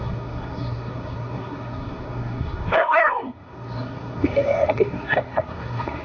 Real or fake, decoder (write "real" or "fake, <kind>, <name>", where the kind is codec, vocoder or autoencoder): fake, codec, SNAC